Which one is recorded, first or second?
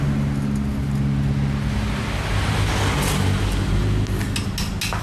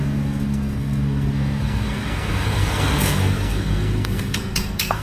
first